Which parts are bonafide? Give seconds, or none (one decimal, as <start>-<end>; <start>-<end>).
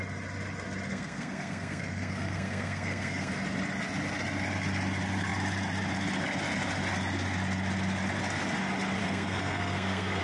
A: 0.0-0.9; 3.3-9.0